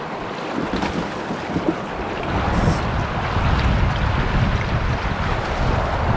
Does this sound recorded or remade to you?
recorded